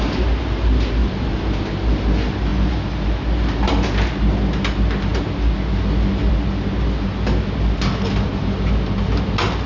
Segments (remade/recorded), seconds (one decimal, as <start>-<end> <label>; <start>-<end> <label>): 0.0-1.0 recorded; 1.0-1.6 remade; 1.6-9.7 recorded